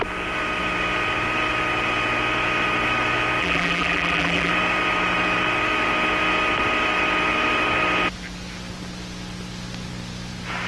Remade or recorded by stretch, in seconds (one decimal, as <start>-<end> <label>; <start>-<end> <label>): 0.0-3.4 recorded; 3.4-4.5 remade; 4.5-10.7 recorded

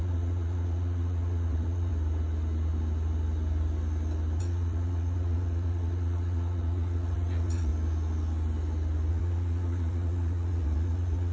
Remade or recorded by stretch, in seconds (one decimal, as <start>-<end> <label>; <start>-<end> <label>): 0.0-1.9 remade; 1.9-4.4 recorded; 4.4-7.7 remade; 7.7-9.1 recorded; 9.1-11.3 remade

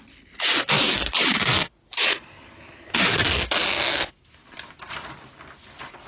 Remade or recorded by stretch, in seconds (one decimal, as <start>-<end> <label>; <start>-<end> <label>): 0.0-6.1 recorded

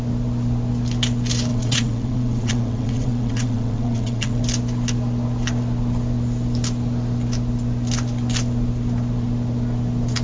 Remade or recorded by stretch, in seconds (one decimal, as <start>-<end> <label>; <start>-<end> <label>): 0.0-1.5 recorded; 1.5-4.4 remade; 4.4-10.2 recorded